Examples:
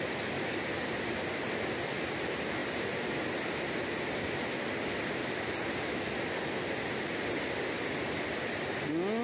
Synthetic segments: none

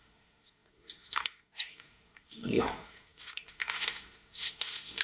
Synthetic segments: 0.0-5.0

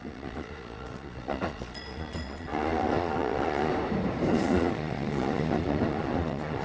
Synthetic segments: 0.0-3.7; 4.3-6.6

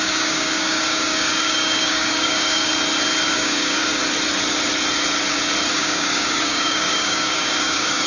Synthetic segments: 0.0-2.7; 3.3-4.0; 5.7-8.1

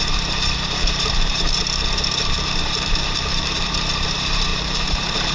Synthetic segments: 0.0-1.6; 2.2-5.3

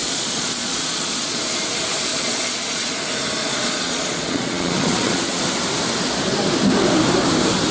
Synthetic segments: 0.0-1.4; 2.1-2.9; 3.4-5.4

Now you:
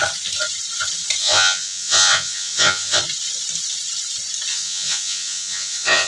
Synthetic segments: 1.2-3.0; 4.5-6.1